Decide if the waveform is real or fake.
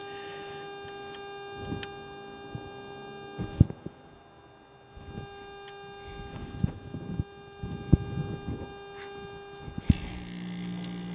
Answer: real